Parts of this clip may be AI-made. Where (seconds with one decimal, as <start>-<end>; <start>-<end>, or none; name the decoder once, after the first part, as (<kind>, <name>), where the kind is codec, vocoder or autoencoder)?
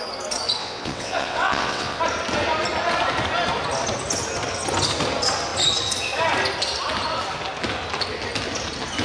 0.6-2.0 (vocoder, WaveNeXt)